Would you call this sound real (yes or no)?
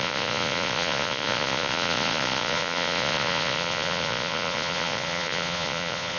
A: no